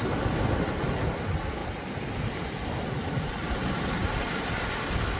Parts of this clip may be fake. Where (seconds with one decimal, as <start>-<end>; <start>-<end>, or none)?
none